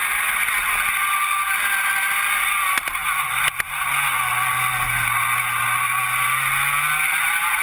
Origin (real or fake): real